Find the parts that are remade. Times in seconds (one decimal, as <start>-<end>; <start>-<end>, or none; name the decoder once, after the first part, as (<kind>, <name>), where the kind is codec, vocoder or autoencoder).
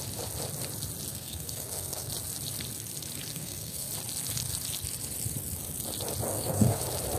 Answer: 1.1-2.1 (codec, SNAC); 3.3-3.9; 6.3-6.8